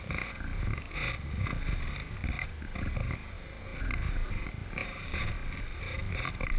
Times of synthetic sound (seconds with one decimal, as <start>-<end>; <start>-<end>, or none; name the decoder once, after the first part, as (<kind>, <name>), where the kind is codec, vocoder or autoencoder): none